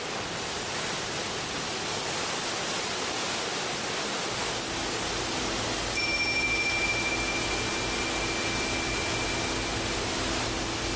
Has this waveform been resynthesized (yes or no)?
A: no